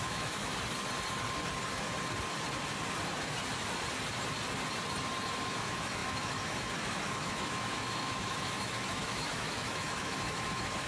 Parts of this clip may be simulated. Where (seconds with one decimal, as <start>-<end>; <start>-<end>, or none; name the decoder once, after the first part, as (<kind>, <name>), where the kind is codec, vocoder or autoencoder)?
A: 0.0-0.5 (autoencoder, DAC-VAE); 5.4-10.9